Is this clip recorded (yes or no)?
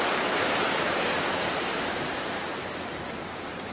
no